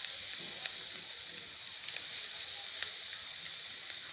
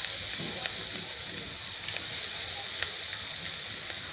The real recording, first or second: second